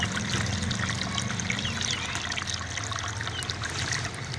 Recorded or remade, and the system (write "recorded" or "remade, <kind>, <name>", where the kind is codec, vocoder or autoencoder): recorded